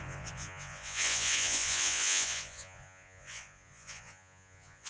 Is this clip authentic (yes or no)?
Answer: no